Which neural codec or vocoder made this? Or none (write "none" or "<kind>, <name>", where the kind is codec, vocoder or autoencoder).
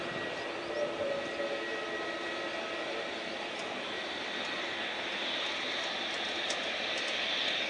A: none